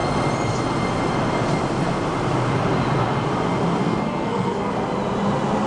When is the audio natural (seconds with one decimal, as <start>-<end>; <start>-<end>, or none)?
0.0-3.8; 4.7-5.7